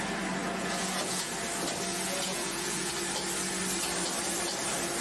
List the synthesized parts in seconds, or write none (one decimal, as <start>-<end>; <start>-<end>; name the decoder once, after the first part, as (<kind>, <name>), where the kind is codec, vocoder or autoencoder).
0.4-1.3 (vocoder, Vocos); 1.9-2.9